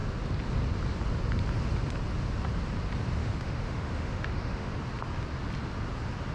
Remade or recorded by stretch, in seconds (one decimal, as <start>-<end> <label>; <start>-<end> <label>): 0.0-3.2 recorded; 3.2-4.7 remade; 4.7-6.3 recorded